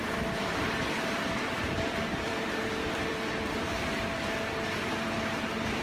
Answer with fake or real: fake